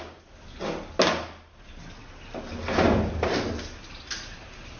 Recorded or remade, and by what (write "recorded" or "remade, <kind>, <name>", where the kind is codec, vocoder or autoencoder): recorded